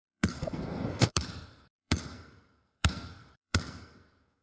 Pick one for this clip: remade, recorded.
remade